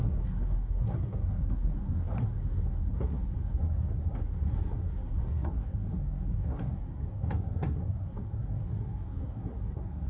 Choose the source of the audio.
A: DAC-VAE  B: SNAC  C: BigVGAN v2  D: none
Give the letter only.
B